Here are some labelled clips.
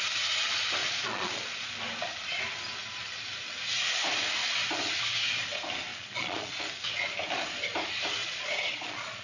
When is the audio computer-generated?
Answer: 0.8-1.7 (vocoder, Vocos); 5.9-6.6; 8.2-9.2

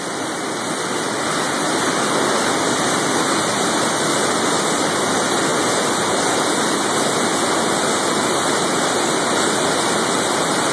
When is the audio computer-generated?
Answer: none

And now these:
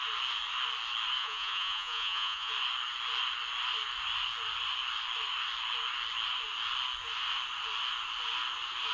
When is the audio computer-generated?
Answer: 1.2-2.5 (vocoder, Vocos)